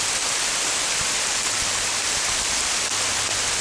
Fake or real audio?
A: real